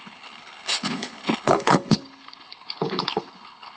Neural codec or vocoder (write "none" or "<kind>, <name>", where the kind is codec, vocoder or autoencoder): codec, HILCodec